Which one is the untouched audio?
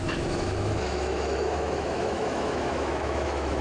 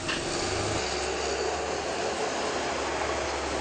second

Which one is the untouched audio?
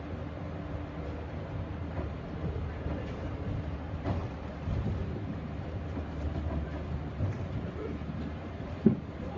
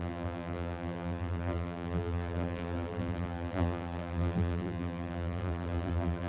first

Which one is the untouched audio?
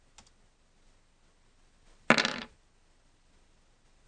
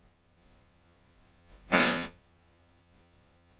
first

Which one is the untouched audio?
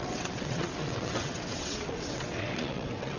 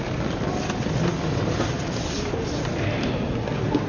second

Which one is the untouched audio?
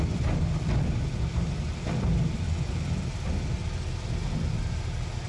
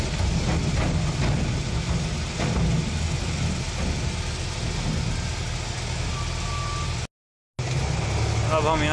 second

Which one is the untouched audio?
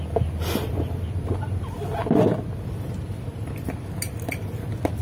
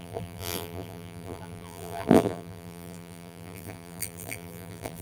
first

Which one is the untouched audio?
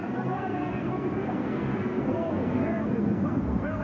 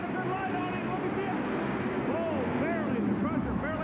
second